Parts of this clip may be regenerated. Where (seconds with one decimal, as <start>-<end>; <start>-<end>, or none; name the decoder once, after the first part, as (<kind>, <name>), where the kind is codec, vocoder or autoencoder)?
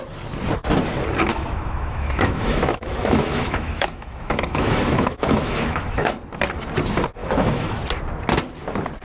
1.3-6.1 (autoencoder, DAC-VAE); 7.2-7.8